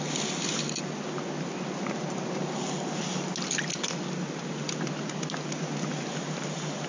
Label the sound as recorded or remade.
recorded